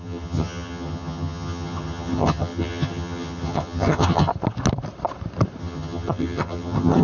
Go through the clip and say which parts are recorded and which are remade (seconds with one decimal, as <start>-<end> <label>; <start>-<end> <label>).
0.0-4.3 remade; 4.3-5.6 recorded; 5.6-7.0 remade